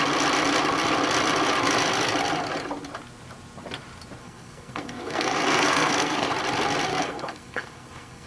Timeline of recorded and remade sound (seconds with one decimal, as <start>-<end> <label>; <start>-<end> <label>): 0.0-4.2 recorded; 4.2-6.3 remade; 6.3-6.9 recorded; 6.9-8.3 remade